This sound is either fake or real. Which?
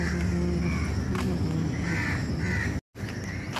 real